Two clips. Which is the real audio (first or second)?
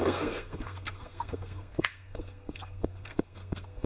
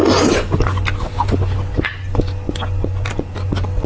second